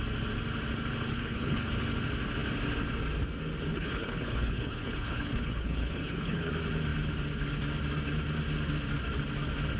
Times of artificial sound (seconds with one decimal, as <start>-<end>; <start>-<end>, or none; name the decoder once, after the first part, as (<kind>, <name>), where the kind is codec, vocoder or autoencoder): 1.1-1.7 (codec, HILCodec); 3.7-6.5